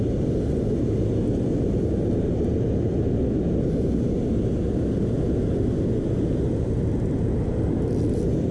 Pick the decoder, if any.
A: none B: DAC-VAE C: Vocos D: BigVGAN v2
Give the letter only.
A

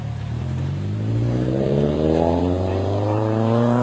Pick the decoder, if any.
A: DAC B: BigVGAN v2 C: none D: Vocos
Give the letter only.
B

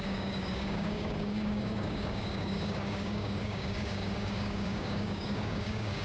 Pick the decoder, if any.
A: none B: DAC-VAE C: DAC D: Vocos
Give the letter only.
C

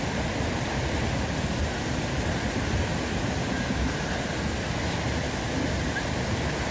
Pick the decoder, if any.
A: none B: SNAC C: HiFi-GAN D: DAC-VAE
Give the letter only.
A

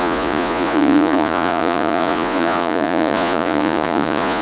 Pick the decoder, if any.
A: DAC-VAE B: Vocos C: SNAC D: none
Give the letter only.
B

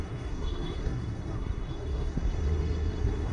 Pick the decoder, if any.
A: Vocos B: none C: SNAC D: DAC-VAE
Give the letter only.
C